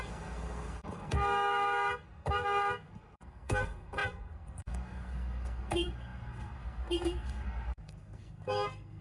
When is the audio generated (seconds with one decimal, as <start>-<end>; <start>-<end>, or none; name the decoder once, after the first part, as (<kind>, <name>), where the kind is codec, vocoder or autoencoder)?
0.0-9.0 (codec, SNAC)